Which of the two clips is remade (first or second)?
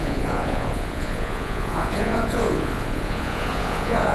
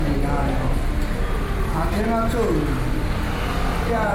first